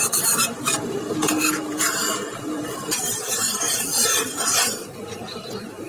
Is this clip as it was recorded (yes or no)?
no